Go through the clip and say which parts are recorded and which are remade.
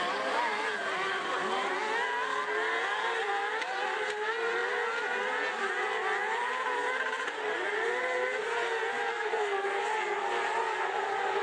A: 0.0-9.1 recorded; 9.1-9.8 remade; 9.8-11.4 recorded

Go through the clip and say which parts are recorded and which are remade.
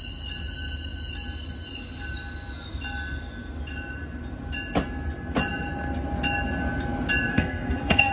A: 0.0-7.3 recorded; 7.3-8.1 remade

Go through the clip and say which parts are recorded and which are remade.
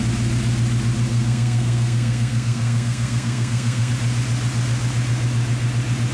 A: 0.0-1.1 recorded; 1.1-3.9 remade; 3.9-6.1 recorded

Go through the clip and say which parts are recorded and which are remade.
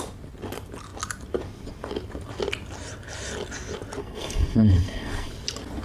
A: 0.0-4.0 recorded; 4.0-5.3 remade; 5.3-5.8 recorded